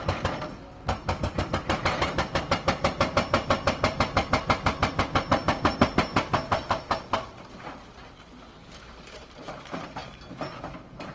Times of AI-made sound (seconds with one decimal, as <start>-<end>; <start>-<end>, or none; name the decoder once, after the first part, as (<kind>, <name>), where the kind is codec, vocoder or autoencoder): none